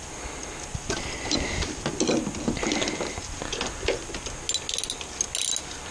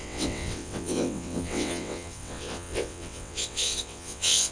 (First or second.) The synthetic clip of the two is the second